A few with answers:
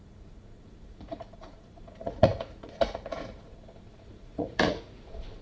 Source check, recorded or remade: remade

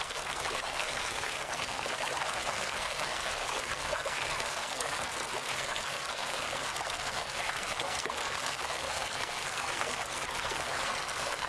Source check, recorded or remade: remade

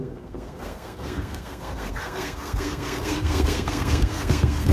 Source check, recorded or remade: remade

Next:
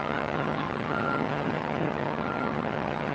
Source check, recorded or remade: remade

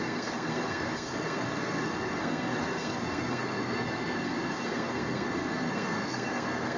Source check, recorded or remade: remade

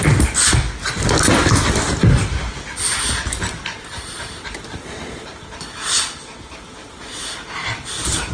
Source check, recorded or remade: recorded